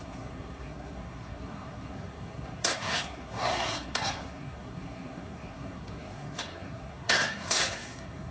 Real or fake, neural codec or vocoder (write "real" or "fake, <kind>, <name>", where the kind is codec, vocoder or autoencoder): fake, codec, SNAC